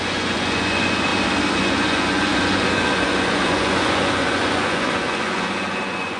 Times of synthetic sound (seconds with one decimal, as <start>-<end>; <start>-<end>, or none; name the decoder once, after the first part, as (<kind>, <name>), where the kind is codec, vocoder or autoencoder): 0.0-1.1 (vocoder, Vocos); 1.6-6.2